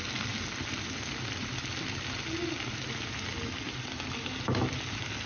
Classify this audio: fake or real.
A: real